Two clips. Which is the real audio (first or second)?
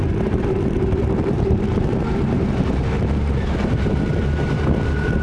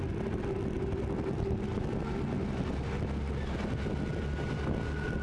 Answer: second